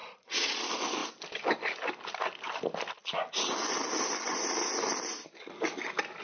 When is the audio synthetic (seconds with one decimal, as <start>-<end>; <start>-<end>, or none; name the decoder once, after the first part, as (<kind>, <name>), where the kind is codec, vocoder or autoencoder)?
0.0-0.6 (vocoder, Vocos)